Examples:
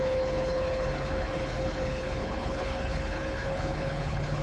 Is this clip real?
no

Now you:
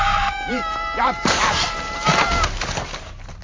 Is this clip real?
no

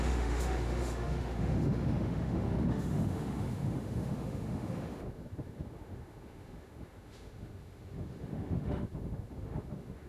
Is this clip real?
no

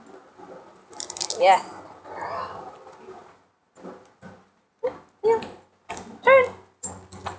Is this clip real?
yes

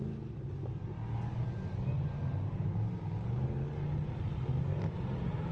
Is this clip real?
yes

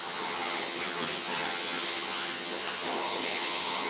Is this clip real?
no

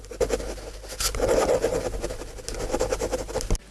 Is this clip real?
yes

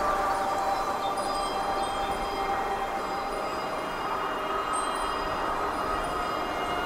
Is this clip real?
no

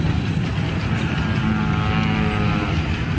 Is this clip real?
yes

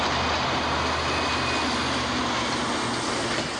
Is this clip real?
yes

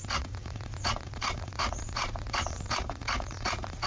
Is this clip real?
no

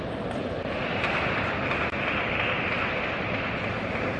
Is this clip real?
yes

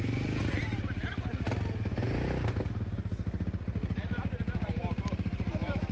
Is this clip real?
yes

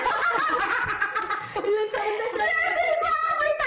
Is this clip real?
no